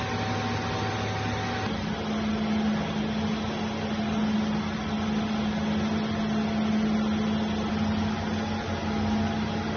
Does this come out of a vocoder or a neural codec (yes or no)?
no